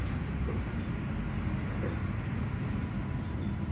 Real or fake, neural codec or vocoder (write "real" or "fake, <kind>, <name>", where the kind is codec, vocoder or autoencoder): real